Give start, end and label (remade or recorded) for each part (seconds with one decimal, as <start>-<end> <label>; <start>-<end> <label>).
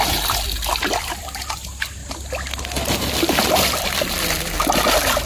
0.0-2.0 remade; 2.0-3.1 recorded; 3.1-5.3 remade